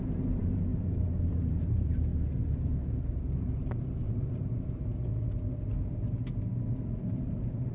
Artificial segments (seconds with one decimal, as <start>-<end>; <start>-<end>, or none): 0.0-2.1; 3.0-4.9; 7.0-7.7